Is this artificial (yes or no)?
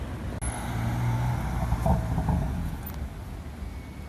no